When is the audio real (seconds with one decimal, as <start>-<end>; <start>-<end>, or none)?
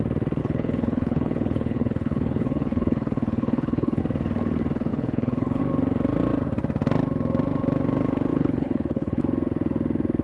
0.0-0.4; 4.0-4.9; 5.6-8.3; 9.2-10.2